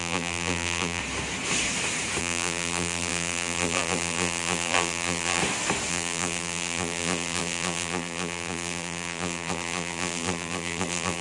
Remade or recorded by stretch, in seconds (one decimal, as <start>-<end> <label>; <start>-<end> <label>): 0.0-1.0 remade; 1.0-2.2 recorded; 2.2-5.4 remade; 5.4-5.9 recorded; 5.9-11.2 remade